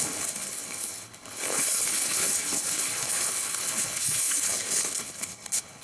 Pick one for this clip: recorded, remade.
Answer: remade